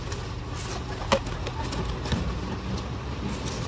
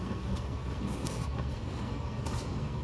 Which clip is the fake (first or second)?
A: second